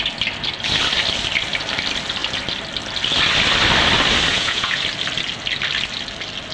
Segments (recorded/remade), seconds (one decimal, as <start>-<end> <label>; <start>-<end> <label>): 0.0-4.3 recorded; 4.3-4.8 remade; 4.8-6.5 recorded